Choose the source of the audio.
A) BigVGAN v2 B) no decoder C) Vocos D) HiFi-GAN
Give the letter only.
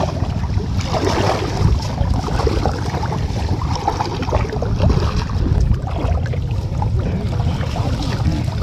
B